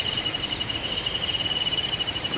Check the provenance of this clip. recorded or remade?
remade